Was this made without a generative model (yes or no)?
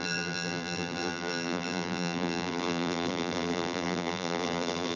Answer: no